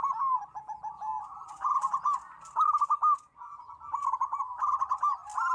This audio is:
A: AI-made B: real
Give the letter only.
B